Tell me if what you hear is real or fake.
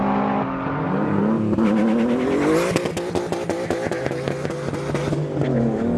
real